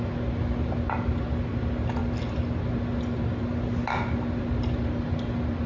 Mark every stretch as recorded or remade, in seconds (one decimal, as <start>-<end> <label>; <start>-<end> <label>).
0.0-5.7 recorded